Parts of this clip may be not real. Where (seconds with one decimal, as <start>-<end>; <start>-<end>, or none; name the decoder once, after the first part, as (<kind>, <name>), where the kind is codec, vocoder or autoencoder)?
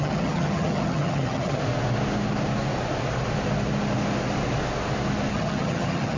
0.0-1.6 (vocoder, HiFi-GAN); 5.3-6.2